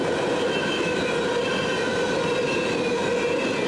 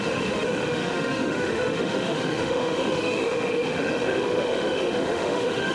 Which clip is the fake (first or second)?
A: second